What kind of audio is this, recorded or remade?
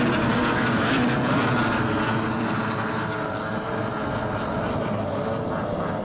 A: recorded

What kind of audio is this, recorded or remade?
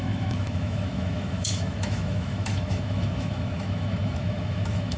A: remade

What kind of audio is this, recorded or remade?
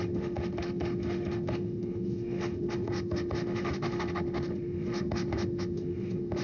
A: remade